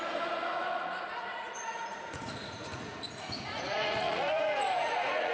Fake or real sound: fake